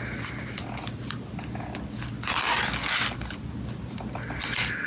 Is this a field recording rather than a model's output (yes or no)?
yes